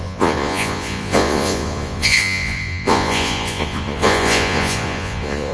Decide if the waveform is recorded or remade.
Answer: remade